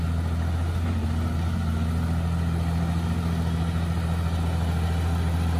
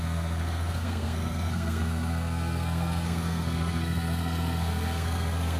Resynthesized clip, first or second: second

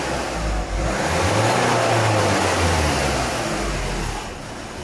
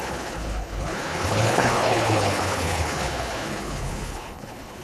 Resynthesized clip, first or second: second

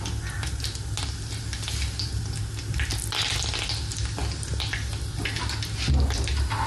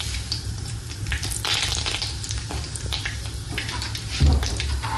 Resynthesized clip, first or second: second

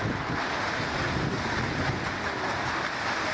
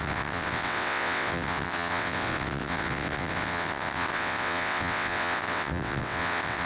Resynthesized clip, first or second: second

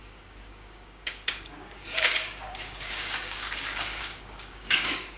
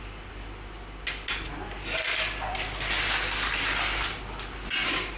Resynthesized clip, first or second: first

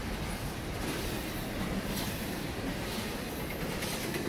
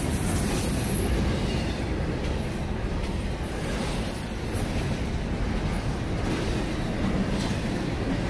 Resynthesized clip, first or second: first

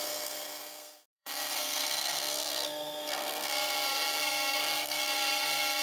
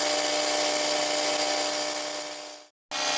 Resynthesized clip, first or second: first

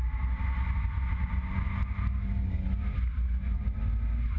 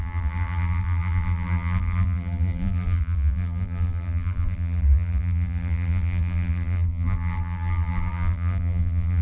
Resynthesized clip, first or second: second